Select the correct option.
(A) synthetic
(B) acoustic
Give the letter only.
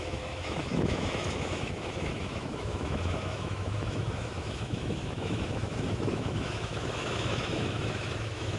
A